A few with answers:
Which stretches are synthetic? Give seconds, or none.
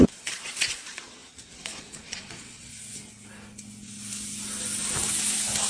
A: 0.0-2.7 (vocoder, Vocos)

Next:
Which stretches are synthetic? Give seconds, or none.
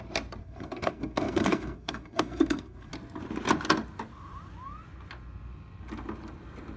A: 0.4-2.9 (codec, SNAC)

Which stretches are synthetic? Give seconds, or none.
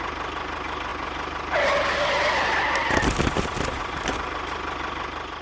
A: none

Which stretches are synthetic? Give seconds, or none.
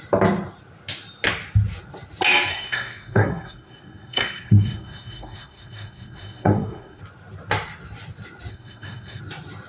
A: 2.5-7.0 (codec, SNAC); 8.5-9.2